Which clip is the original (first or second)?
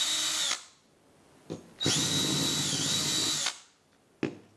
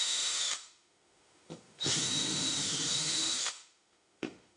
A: first